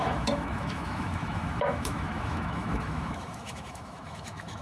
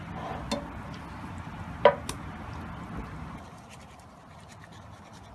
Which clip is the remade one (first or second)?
first